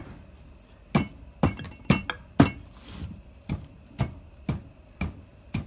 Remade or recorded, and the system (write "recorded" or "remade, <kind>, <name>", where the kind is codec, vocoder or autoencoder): recorded